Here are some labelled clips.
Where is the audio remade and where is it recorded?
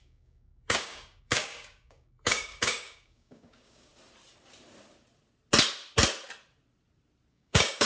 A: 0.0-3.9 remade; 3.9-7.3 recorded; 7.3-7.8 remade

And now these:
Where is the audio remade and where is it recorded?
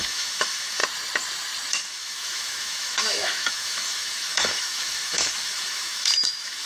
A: 0.0-0.8 remade; 0.8-1.7 recorded; 1.7-6.7 remade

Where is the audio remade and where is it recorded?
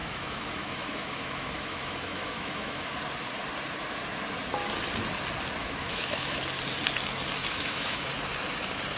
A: 0.0-3.0 remade; 3.0-5.6 recorded; 5.6-6.4 remade; 6.4-7.4 recorded; 7.4-8.1 remade; 8.1-9.0 recorded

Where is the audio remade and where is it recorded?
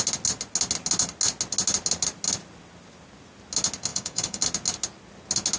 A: 0.0-3.9 recorded; 3.9-4.4 remade; 4.4-5.6 recorded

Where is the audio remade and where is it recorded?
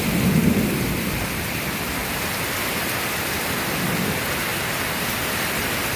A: 0.0-2.0 remade; 2.0-2.6 recorded; 2.6-4.5 remade; 4.5-5.0 recorded; 5.0-6.0 remade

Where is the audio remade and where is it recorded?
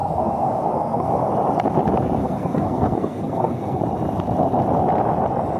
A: 0.0-1.3 remade; 1.3-2.2 recorded; 2.2-3.8 remade; 3.8-5.6 recorded